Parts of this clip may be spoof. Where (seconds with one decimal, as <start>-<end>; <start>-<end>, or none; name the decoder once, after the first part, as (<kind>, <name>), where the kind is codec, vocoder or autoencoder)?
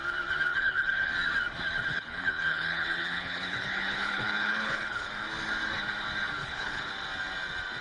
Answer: 0.5-1.1 (codec, HILCodec); 1.9-5.1; 6.4-6.9